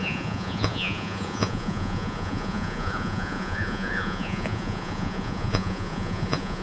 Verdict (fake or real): fake